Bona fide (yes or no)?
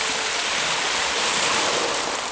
yes